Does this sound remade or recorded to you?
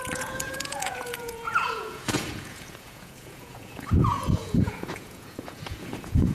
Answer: remade